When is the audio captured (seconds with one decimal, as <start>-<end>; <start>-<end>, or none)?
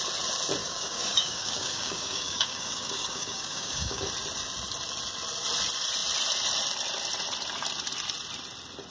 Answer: 0.0-0.6; 4.1-8.9